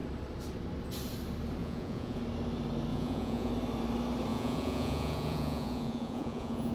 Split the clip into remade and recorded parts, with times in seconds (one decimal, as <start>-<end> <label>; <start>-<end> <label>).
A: 0.0-1.6 recorded; 1.6-2.2 remade; 2.2-2.9 recorded; 2.9-3.5 remade; 3.5-4.3 recorded; 4.3-6.7 remade